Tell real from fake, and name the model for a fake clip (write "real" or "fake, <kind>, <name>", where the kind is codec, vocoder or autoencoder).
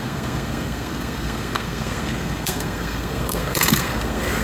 fake, codec, SNAC